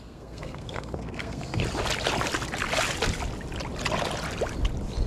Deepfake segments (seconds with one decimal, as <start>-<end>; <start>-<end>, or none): 0.0-1.6